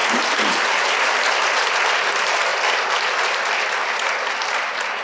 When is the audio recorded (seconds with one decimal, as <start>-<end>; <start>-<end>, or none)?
0.0-5.0